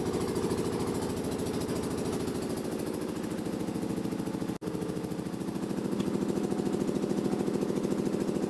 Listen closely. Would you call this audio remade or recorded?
recorded